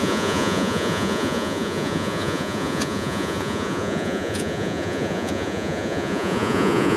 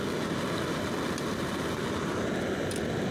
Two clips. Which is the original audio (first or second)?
second